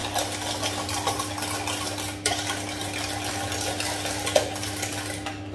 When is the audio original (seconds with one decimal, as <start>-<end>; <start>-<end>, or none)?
0.0-5.5